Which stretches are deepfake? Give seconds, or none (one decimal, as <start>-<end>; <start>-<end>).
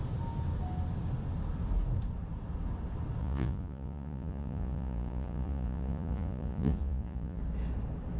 3.2-7.4